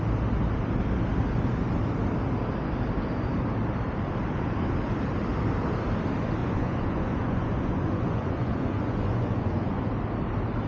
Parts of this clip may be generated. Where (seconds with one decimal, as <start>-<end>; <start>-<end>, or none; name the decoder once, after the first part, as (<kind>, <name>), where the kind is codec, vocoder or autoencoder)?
6.4-9.8 (vocoder, Vocos)